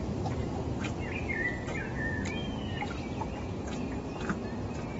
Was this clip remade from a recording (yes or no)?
no